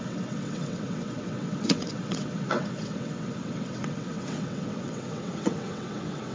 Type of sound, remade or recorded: remade